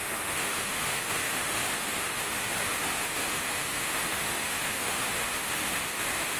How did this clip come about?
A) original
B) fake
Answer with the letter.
B